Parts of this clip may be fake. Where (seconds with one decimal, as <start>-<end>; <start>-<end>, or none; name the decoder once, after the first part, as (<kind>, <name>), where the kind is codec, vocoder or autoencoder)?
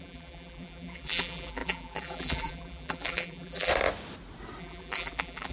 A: 0.0-3.7 (vocoder, BigVGAN v2); 4.6-5.5